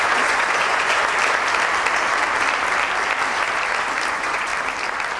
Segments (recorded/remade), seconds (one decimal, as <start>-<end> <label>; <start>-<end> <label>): 0.0-1.0 remade; 1.0-4.1 recorded; 4.1-4.5 remade; 4.5-5.2 recorded